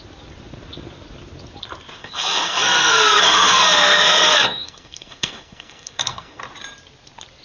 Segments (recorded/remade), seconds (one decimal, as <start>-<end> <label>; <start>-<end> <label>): 0.0-2.0 recorded; 2.0-6.4 remade; 6.4-7.4 recorded

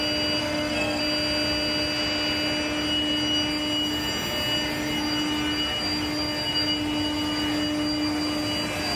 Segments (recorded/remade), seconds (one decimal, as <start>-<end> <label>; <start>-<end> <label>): 0.0-0.4 recorded; 0.4-1.0 remade; 1.0-9.0 recorded

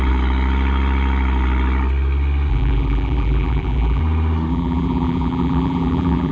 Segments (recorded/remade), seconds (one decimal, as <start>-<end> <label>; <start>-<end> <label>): 0.0-2.5 recorded; 2.5-4.0 remade; 4.0-4.5 recorded; 4.5-6.3 remade